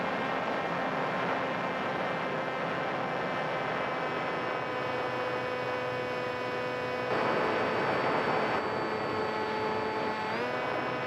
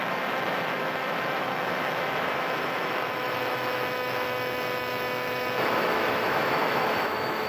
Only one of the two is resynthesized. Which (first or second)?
second